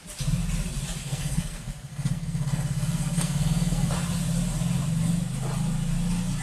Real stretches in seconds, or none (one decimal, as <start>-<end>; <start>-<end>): 0.0-1.0; 3.9-6.4